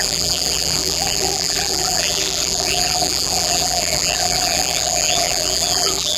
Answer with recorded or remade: remade